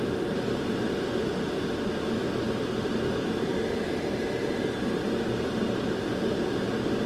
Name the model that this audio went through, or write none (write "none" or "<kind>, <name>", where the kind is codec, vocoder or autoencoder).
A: none